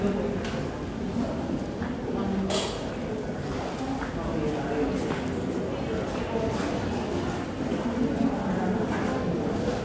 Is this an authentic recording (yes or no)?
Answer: yes